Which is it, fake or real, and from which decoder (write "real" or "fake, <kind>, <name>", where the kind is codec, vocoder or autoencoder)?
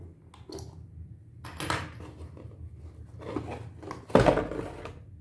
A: real